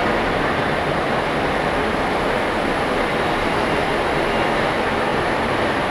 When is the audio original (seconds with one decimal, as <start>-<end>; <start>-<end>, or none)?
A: 2.3-3.1; 3.9-5.1